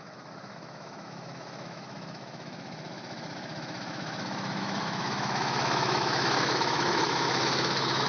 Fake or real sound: fake